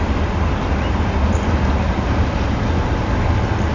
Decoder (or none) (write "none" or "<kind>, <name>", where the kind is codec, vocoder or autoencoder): none